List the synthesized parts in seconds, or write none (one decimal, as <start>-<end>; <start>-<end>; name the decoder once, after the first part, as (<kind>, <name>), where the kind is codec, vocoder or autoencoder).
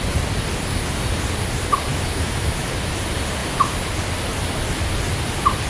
1.9-3.0 (autoencoder, DAC-VAE)